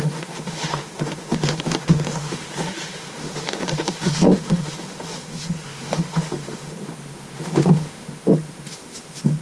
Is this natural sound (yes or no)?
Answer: no